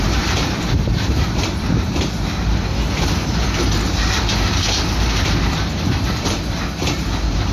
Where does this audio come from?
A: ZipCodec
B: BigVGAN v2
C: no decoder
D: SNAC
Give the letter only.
B